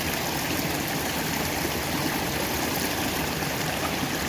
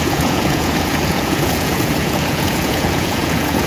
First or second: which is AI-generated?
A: second